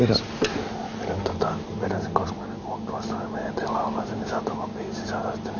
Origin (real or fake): real